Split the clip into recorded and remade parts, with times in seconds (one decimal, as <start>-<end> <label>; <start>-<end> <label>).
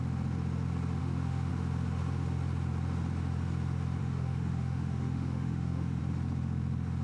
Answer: 0.0-1.0 recorded; 1.0-1.5 remade; 1.5-4.0 recorded; 4.0-6.0 remade; 6.0-7.0 recorded